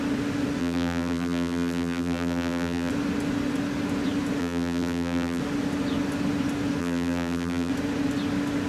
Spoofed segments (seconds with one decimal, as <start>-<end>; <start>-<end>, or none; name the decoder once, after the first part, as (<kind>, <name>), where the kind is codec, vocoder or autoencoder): 0.6-2.9 (vocoder, BigVGAN v2); 4.4-5.4; 6.8-7.7